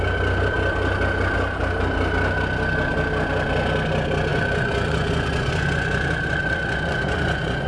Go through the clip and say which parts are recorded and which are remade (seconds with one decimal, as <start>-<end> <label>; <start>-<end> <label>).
0.0-4.3 recorded; 4.3-7.7 remade